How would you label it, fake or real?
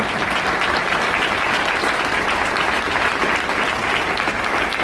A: real